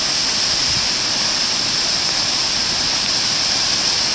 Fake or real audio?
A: real